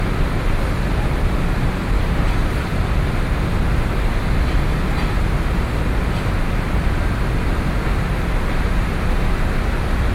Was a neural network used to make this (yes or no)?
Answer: no